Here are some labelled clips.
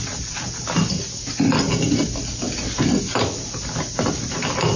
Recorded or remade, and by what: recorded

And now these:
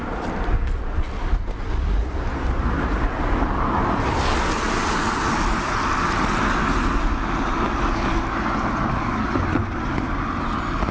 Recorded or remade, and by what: recorded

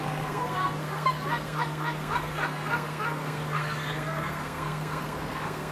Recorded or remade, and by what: remade, codec, SNAC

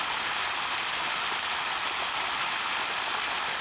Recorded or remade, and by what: recorded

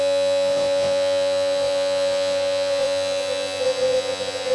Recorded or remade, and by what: remade, vocoder, Vocos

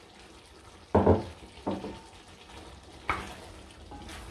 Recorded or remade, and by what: recorded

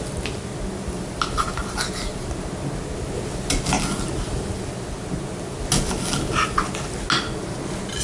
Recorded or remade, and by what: recorded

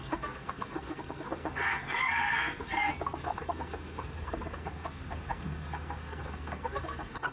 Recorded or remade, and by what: remade, codec, SNAC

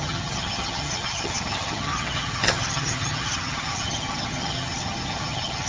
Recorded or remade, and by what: remade, vocoder, HiFi-GAN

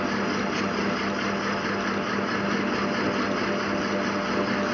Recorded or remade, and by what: recorded